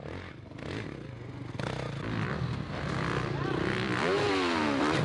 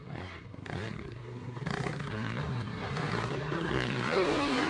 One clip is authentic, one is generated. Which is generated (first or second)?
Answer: second